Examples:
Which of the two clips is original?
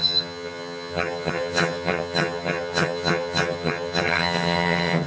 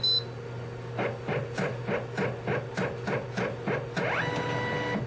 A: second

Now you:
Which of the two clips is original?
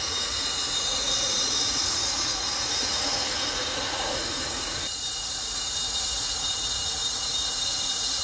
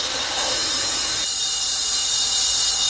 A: second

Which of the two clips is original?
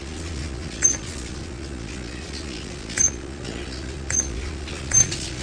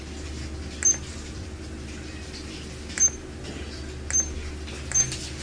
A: second